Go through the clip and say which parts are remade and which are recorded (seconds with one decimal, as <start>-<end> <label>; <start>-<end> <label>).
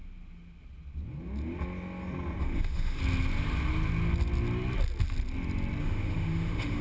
0.0-2.4 recorded; 2.4-3.0 remade; 3.0-5.8 recorded; 5.8-6.8 remade